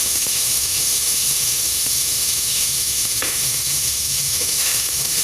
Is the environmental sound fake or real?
fake